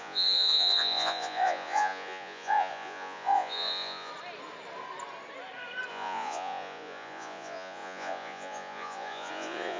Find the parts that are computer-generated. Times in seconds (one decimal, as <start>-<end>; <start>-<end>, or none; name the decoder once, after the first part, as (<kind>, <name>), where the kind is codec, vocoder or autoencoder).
0.0-4.1 (vocoder, Vocos); 5.9-9.8